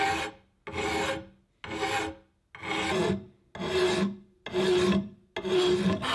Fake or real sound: real